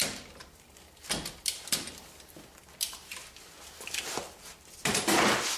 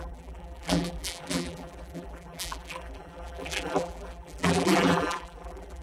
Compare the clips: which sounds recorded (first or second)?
first